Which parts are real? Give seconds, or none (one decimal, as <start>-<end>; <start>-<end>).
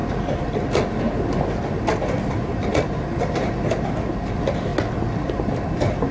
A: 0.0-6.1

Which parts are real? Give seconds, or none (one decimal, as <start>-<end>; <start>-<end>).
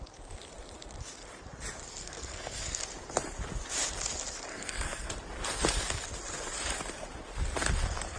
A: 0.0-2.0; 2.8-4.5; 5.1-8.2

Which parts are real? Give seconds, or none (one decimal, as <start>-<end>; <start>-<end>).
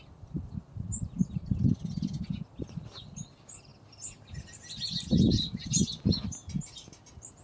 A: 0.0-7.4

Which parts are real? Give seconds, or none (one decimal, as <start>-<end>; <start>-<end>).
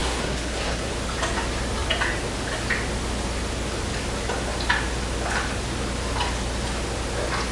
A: 0.9-7.5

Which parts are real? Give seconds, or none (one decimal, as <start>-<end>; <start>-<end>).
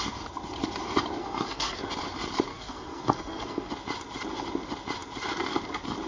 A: 0.0-1.2; 1.8-2.5; 3.7-6.1